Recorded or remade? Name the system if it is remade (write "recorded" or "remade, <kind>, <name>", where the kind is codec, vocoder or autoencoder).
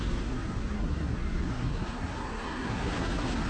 remade, codec, SNAC